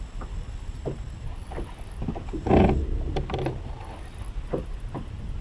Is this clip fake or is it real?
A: real